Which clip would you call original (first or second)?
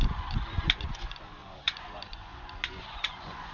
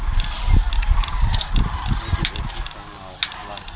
second